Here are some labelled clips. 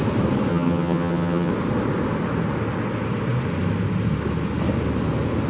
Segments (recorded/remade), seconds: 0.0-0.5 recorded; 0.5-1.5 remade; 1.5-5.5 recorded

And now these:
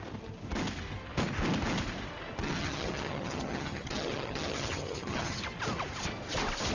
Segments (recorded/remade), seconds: 0.0-2.4 recorded; 2.4-5.4 remade; 5.4-6.7 recorded

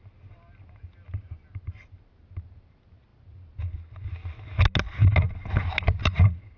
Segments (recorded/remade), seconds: 0.0-6.6 recorded

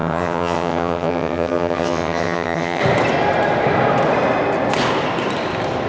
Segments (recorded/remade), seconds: 0.0-2.8 remade; 2.8-5.9 recorded